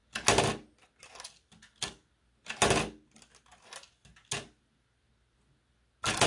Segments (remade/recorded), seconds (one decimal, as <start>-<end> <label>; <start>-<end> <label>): 0.0-6.3 recorded